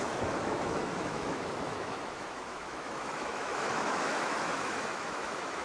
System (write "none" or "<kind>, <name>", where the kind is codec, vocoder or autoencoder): autoencoder, DAC-VAE